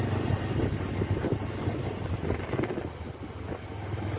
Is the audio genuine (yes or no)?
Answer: yes